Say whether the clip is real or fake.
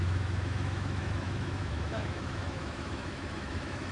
fake